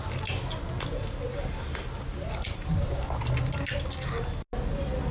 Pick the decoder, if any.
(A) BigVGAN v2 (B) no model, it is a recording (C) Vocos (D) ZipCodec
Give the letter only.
B